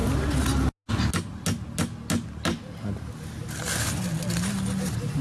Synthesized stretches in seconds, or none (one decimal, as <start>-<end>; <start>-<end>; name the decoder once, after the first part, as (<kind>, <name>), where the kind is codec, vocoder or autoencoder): none